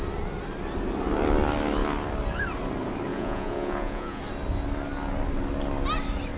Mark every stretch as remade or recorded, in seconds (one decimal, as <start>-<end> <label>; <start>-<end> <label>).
0.0-3.1 recorded; 3.1-4.2 remade; 4.2-6.4 recorded